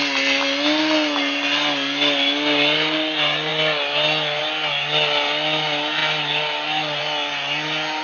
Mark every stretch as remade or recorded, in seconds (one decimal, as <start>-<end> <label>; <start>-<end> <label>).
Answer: 0.0-8.0 recorded